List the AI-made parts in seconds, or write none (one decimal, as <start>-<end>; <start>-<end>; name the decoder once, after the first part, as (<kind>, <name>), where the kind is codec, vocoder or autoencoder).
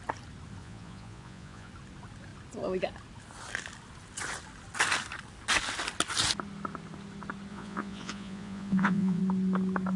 0.6-1.7 (vocoder, Vocos); 7.5-9.2